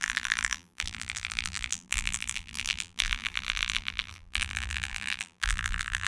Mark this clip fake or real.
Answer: fake